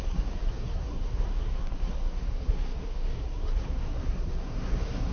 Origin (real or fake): fake